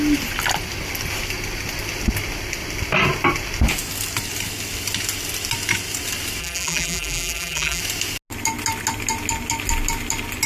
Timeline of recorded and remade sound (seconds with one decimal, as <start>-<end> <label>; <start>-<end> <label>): 0.0-6.4 recorded; 6.4-7.8 remade; 7.8-10.5 recorded